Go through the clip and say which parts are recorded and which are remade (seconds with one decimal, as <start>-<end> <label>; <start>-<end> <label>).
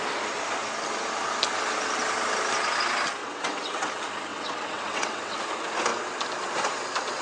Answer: 0.0-3.2 recorded; 3.2-3.9 remade; 3.9-4.3 recorded; 4.3-5.4 remade; 5.4-7.2 recorded